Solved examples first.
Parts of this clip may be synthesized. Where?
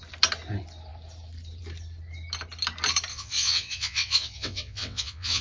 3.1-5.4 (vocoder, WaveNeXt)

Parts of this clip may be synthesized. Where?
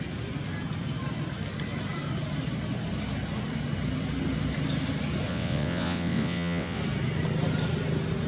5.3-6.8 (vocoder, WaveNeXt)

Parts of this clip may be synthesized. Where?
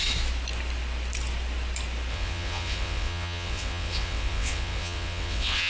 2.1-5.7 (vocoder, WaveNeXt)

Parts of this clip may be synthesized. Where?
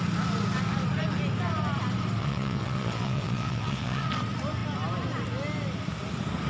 2.2-4.1 (vocoder, WaveNeXt)